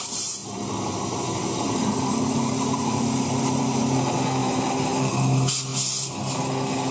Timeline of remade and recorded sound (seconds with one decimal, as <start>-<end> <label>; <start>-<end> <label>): 0.0-0.4 recorded; 0.4-3.6 remade; 3.6-4.4 recorded; 4.4-5.1 remade; 5.1-6.9 recorded